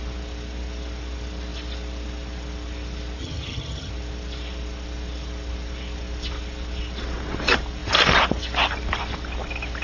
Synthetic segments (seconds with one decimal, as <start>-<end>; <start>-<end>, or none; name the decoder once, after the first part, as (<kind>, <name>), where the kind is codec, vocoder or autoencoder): 3.2-3.9 (vocoder, HiFi-GAN)